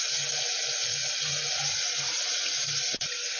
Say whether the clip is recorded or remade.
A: recorded